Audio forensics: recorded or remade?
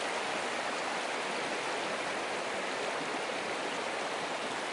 recorded